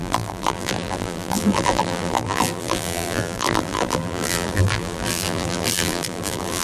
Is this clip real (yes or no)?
no